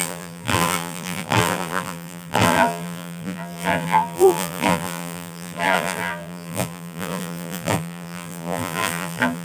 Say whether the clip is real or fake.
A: fake